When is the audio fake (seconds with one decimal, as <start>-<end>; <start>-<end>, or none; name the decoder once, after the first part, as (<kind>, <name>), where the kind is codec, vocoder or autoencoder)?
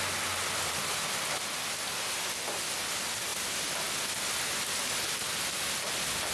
none